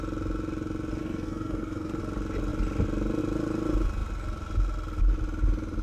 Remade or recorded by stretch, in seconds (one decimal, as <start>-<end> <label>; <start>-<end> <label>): 0.0-1.0 recorded; 1.0-2.0 remade; 2.0-5.8 recorded